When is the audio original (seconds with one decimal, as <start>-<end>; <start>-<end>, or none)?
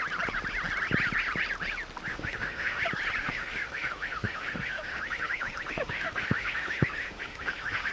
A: 0.0-2.1; 2.8-3.2